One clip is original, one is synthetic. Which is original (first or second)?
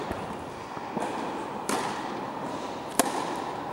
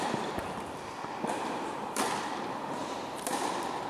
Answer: first